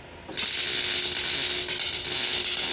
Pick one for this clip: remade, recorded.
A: recorded